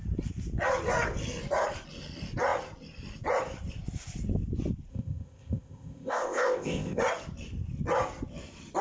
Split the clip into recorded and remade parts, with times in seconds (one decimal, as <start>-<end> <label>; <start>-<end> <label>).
0.0-4.9 recorded; 4.9-7.0 remade; 7.0-8.8 recorded